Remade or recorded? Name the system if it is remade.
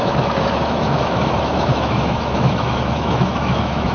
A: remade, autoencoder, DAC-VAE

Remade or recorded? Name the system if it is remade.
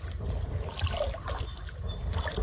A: recorded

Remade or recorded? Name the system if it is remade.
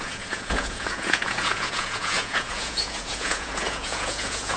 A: remade, vocoder, Vocos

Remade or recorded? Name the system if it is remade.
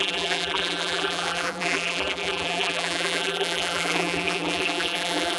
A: remade, vocoder, BigVGAN v2